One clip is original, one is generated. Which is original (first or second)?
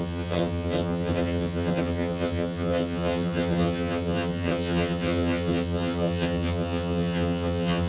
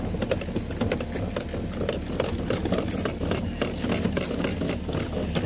second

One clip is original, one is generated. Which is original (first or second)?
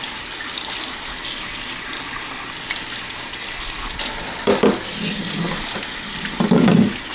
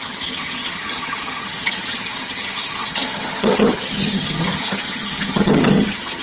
first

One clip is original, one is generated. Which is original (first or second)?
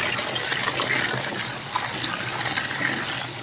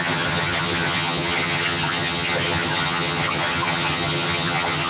first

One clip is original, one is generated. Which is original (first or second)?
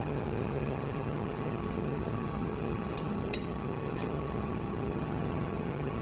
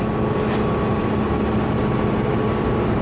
second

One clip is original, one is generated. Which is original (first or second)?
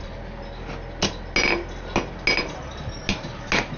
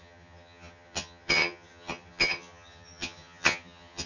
first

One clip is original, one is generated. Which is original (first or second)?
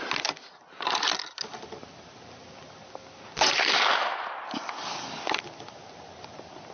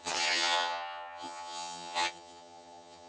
first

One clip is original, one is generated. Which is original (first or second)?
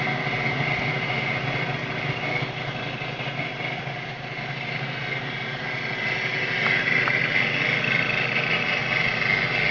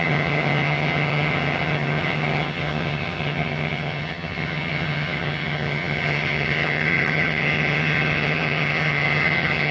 first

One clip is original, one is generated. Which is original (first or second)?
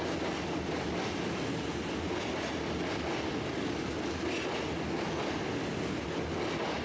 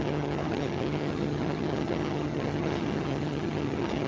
first